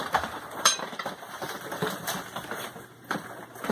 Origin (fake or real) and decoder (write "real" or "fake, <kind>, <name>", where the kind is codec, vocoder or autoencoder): fake, vocoder, BigVGAN v2